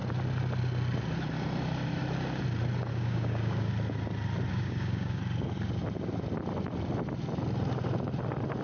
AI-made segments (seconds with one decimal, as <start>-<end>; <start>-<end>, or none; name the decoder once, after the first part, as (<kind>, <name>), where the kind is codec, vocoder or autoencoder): 2.9-3.7 (codec, DAC); 4.5-5.2

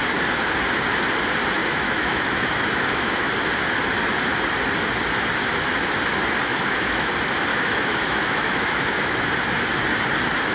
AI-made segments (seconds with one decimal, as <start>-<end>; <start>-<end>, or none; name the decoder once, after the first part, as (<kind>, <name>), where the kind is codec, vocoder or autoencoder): 1.6-3.3 (autoencoder, DAC-VAE); 6.5-7.1; 7.5-9.3